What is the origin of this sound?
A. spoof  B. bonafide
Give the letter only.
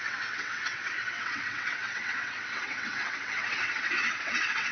A